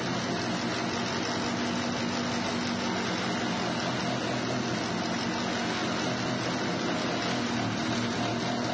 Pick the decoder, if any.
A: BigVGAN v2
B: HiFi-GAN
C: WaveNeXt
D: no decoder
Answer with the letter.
D